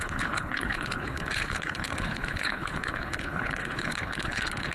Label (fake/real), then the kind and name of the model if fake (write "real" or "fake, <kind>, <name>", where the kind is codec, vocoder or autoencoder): fake, codec, HILCodec